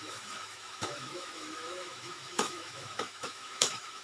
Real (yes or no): no